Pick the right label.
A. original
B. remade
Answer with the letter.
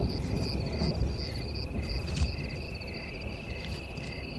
A